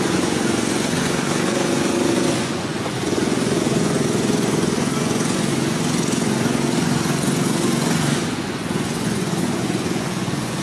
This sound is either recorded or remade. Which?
remade